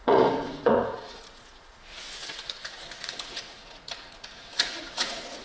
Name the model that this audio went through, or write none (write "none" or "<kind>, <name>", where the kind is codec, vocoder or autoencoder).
vocoder, Vocos